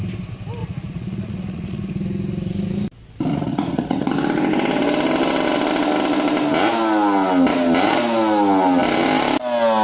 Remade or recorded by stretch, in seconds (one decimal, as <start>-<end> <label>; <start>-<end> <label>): 0.0-0.6 recorded; 0.6-1.9 remade; 1.9-3.3 recorded; 3.3-4.1 remade; 4.1-9.8 recorded